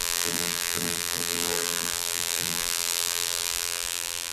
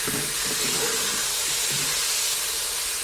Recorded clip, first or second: second